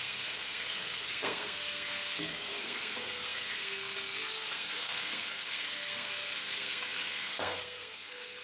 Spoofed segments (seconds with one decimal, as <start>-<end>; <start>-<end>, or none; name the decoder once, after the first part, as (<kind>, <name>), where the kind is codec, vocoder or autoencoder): 0.0-8.4 (codec, SNAC)